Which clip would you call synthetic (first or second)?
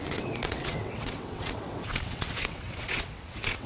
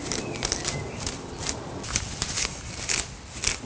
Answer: first